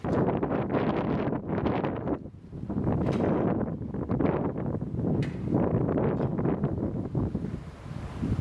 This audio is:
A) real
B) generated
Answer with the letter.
A